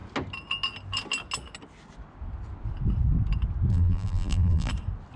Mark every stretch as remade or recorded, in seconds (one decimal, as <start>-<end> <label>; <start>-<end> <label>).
0.0-3.7 recorded; 3.7-4.7 remade; 4.7-5.2 recorded